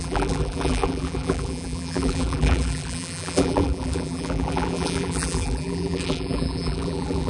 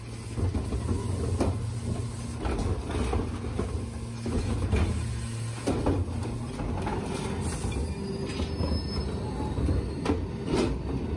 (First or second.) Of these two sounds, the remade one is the first